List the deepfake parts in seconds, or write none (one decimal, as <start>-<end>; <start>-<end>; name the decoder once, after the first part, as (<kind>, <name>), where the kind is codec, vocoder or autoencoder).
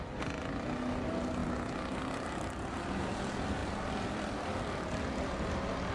3.6-5.5 (vocoder, BigVGAN v2)